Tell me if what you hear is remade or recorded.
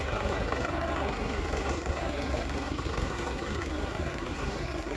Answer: remade